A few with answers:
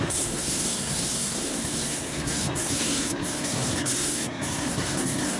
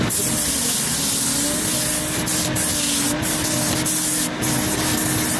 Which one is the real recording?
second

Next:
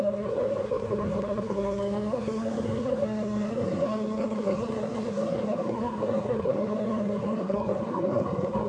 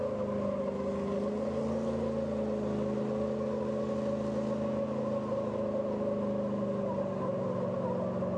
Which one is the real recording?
second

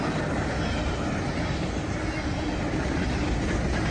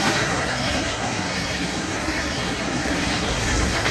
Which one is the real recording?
first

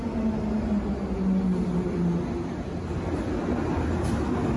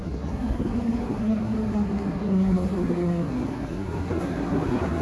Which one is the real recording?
first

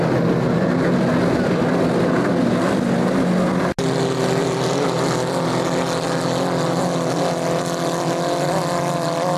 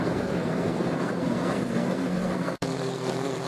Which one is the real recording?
first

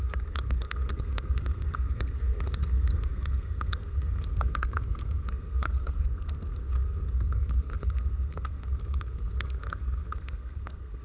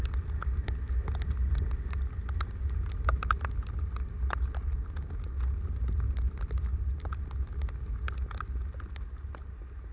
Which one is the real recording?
second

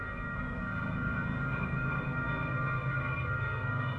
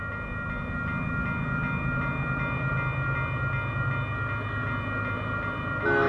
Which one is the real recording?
second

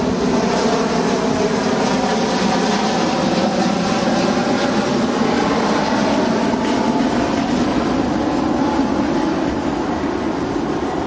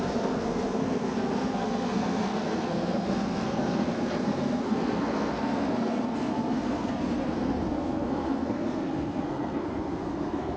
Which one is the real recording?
first